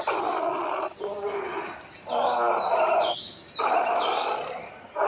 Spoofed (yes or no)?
no